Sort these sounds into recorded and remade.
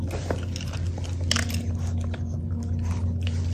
recorded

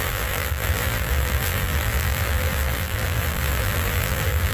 remade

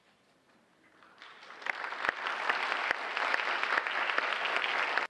recorded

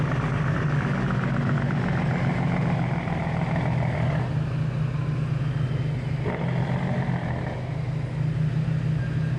recorded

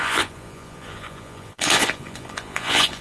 remade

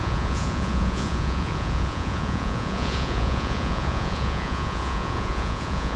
remade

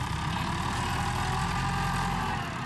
recorded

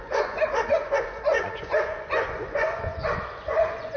remade